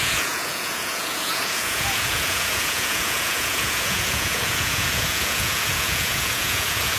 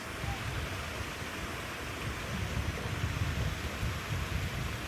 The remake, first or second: first